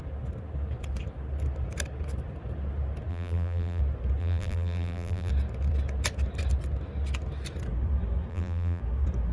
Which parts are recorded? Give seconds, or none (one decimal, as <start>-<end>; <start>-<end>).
0.0-3.1; 3.8-4.2; 5.3-8.3; 8.8-9.3